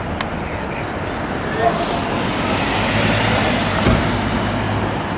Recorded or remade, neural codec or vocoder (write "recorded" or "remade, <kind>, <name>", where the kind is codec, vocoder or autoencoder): recorded